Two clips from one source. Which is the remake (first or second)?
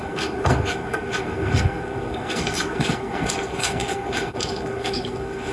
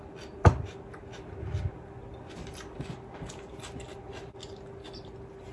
first